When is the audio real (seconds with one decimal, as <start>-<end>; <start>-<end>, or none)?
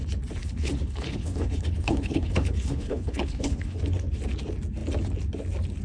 0.0-0.4; 3.8-5.8